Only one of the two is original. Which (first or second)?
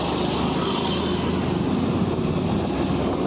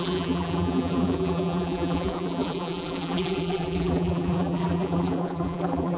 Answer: first